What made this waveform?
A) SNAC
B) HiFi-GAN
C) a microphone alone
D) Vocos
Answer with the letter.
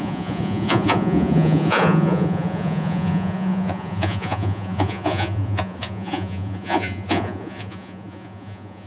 D